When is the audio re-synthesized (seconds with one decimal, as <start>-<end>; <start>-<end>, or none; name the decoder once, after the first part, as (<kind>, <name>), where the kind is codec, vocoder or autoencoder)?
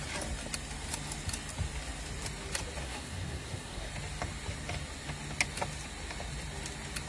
2.8-3.9 (codec, SNAC)